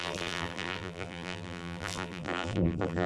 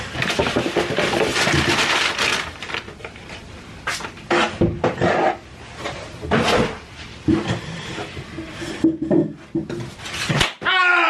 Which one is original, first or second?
second